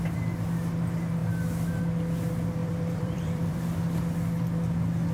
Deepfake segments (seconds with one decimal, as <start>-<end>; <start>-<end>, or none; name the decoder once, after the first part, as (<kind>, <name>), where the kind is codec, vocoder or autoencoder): 2.6-3.6 (vocoder, BigVGAN v2)